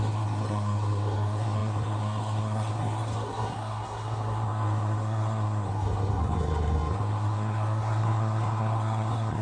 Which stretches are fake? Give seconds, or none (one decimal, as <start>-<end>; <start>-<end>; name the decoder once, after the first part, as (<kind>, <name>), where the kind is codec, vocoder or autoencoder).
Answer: 0.0-9.4 (codec, SNAC)